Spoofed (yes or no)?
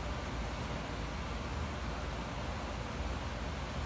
no